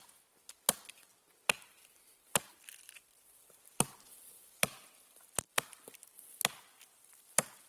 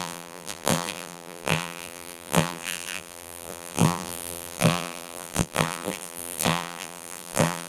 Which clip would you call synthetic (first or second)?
second